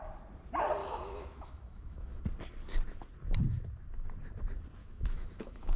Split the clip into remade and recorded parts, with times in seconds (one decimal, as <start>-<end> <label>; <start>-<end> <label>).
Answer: 0.0-0.8 recorded; 0.8-2.2 remade; 2.2-4.8 recorded; 4.8-5.8 remade